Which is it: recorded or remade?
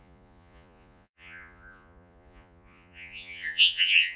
remade